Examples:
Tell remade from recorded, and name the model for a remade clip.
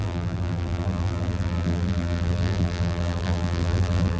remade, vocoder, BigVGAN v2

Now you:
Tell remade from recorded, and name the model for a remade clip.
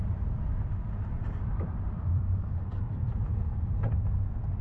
remade, vocoder, BigVGAN v2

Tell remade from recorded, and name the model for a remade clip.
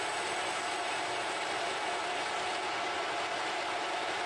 remade, vocoder, BigVGAN v2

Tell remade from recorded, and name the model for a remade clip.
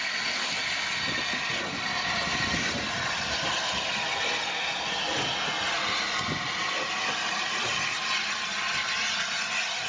recorded